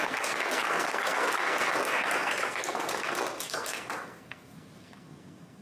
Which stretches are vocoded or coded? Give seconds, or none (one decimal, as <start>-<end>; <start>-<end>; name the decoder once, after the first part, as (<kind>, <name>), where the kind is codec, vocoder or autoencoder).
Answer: 0.0-5.6 (codec, SNAC)